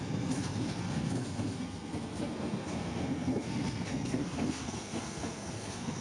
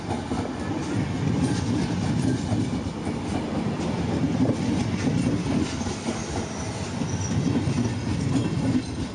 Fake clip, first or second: first